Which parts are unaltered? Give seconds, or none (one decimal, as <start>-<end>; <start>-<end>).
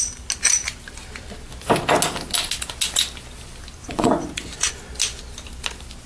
0.0-3.8; 4.7-6.1